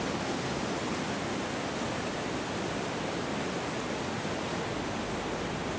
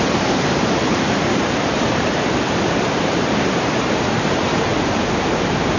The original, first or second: first